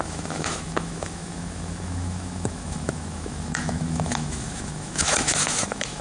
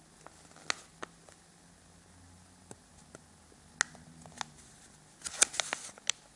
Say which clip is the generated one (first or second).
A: first